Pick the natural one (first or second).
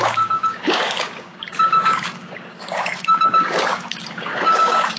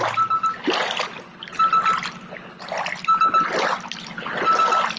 second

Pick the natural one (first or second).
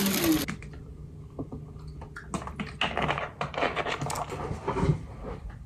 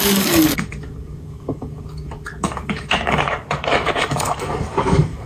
first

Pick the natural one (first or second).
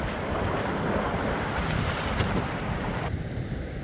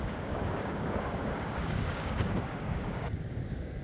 first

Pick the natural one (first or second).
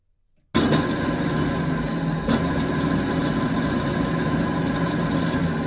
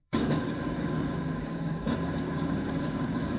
first